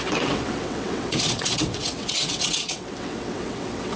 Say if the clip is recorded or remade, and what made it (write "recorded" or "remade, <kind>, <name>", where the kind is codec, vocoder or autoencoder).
remade, vocoder, WaveNeXt